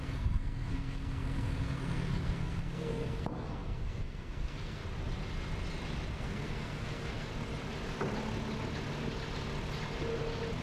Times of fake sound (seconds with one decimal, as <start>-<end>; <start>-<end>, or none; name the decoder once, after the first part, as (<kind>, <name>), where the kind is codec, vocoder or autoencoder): 0.0-4.8 (codec, SNAC); 6.1-7.3

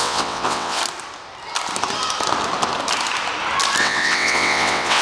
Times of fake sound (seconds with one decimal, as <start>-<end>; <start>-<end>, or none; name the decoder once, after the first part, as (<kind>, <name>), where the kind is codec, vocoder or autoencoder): 0.0-0.8 (vocoder, WaveNeXt); 3.8-5.0

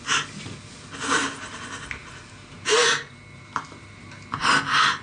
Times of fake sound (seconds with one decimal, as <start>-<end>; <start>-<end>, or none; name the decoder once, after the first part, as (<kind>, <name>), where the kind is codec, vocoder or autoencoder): 2.0-4.4 (vocoder, BigVGAN v2)